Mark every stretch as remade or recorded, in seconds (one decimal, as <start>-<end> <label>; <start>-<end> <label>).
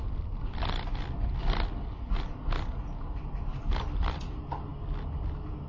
0.0-5.7 recorded